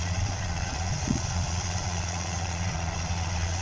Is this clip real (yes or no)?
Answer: no